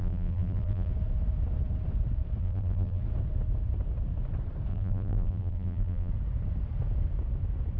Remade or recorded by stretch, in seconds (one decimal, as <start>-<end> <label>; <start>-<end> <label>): 0.0-0.9 remade; 0.9-2.4 recorded; 2.4-3.0 remade; 3.0-4.7 recorded; 4.7-6.1 remade; 6.1-7.8 recorded